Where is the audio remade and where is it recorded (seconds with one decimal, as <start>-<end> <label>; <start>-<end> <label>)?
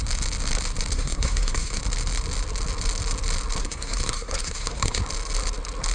0.0-0.9 recorded; 0.9-1.8 remade; 1.8-3.6 recorded; 3.6-5.0 remade; 5.0-5.9 recorded